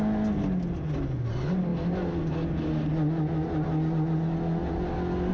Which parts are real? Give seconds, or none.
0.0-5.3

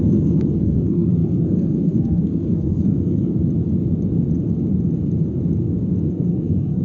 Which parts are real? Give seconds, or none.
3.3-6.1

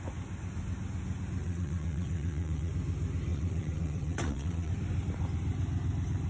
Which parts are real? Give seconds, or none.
0.0-1.4; 2.7-3.3; 4.7-6.3

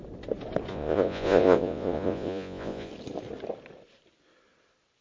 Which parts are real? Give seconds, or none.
0.0-0.7; 2.9-5.0

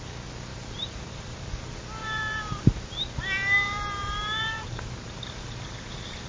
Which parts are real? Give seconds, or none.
0.0-0.5; 1.6-2.0; 2.9-4.0; 5.2-6.3

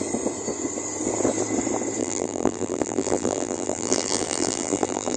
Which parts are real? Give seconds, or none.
0.0-2.0